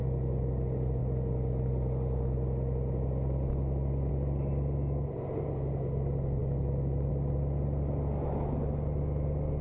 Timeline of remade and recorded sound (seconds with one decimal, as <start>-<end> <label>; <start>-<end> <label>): 0.0-9.6 recorded

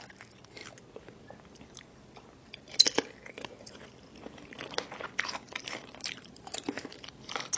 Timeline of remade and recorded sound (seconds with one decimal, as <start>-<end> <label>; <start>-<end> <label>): 0.0-7.6 recorded

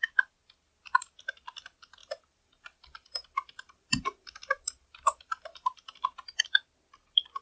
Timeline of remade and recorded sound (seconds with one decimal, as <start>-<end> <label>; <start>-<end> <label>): 0.0-2.0 recorded; 2.0-6.4 remade; 6.4-7.4 recorded

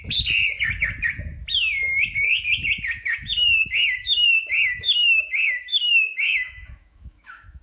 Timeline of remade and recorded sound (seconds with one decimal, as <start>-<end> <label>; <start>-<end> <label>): 0.0-3.8 recorded; 3.8-7.6 remade

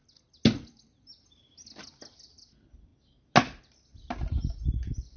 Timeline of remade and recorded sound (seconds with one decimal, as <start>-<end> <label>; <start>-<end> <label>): 0.0-5.2 recorded

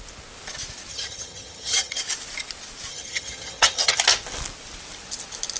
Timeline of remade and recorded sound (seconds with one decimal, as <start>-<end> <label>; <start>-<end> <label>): 0.0-0.9 recorded; 0.9-2.0 remade; 2.0-2.9 recorded; 2.9-4.0 remade; 4.0-5.6 recorded

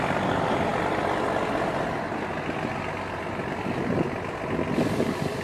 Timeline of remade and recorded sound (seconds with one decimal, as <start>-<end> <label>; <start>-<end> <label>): 0.0-5.4 recorded

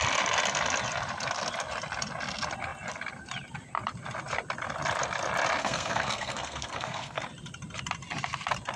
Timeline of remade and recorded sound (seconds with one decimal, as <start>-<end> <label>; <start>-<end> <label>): 0.0-5.6 recorded; 5.6-7.2 remade; 7.2-8.8 recorded